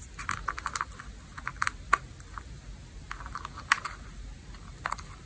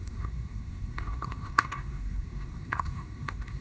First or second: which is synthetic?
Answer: second